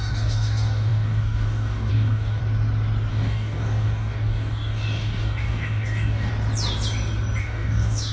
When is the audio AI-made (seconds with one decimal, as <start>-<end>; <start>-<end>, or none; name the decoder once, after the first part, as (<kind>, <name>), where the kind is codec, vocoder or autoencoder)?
0.0-2.4 (codec, DAC); 3.1-6.3; 7.4-8.1